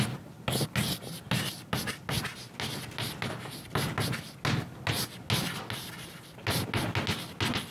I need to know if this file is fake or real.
real